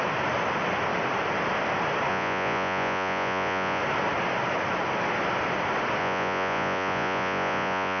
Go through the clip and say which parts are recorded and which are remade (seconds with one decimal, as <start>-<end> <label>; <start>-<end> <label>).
0.0-2.1 recorded; 2.1-3.8 remade; 3.8-6.0 recorded; 6.0-8.0 remade